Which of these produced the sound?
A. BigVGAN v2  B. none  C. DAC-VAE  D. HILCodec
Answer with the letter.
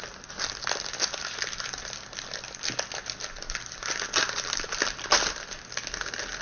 B